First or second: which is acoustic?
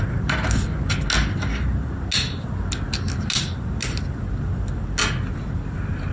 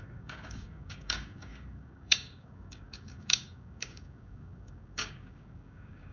first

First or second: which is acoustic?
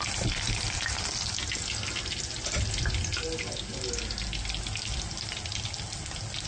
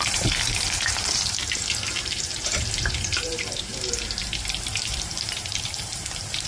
first